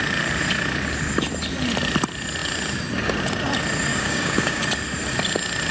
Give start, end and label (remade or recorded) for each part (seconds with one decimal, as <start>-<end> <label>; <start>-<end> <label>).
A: 0.0-3.9 recorded; 3.9-4.6 remade; 4.6-5.7 recorded